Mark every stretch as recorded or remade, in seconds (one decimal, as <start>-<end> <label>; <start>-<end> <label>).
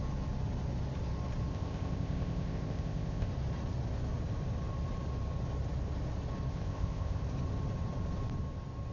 0.0-1.5 recorded; 1.5-3.3 remade; 3.3-6.5 recorded; 6.5-7.2 remade; 7.2-8.9 recorded